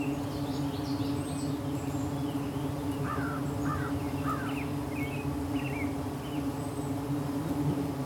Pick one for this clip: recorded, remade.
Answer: recorded